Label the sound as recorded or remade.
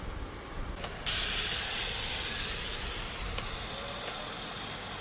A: recorded